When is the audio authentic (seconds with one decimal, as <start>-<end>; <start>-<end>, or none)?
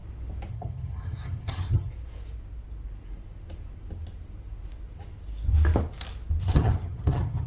0.0-0.5; 1.9-6.4